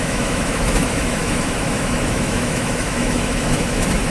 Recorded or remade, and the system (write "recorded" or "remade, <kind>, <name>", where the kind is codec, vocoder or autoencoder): remade, autoencoder, DAC-VAE